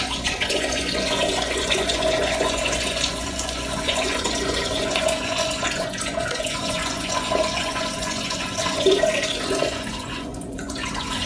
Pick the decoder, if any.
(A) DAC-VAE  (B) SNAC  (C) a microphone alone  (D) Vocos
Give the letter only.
D